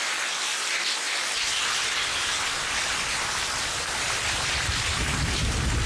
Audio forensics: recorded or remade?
recorded